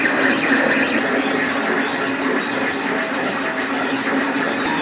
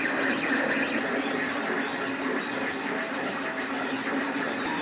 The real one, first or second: first